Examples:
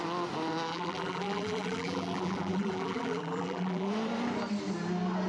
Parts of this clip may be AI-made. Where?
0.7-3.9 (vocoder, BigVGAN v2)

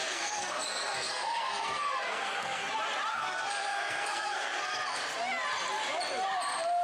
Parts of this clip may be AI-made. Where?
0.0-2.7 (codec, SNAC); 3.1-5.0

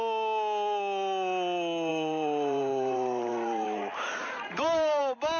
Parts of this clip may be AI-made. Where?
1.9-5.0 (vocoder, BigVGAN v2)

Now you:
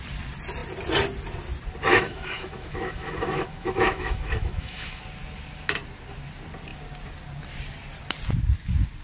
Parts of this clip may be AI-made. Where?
1.9-5.0 (autoencoder, DAC-VAE)

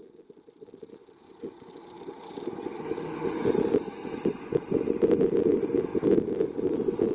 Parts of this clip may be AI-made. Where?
5.9-6.6 (vocoder, BigVGAN v2)

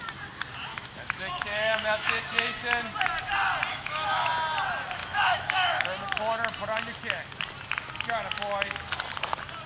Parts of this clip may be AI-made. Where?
0.7-2.2 (autoencoder, DAC-VAE); 3.7-4.3; 5.0-5.7